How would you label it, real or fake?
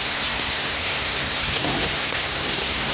fake